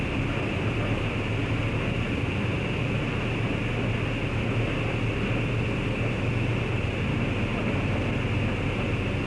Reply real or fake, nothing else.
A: real